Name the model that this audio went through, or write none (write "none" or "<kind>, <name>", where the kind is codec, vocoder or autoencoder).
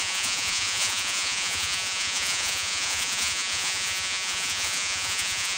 vocoder, Vocos